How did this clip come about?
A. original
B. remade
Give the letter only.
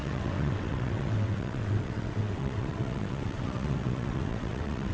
B